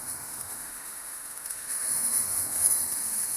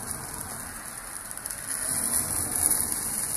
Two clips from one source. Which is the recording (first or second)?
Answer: second